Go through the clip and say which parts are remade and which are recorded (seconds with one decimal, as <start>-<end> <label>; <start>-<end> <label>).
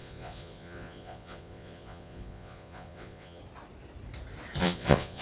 0.0-3.4 remade; 3.4-4.6 recorded; 4.6-5.2 remade